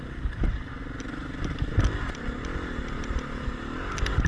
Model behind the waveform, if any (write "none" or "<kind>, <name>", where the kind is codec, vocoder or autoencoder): none